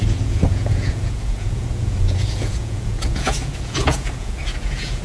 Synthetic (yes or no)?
yes